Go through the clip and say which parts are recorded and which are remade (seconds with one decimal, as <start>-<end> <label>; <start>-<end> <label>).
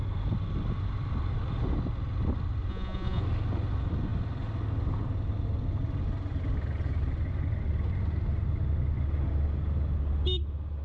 0.0-2.7 recorded; 2.7-3.2 remade; 3.2-10.8 recorded